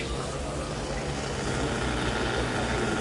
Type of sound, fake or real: real